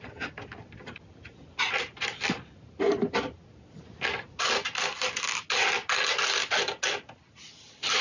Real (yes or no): yes